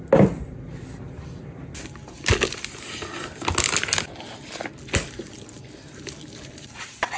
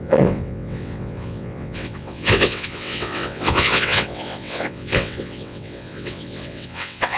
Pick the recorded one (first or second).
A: first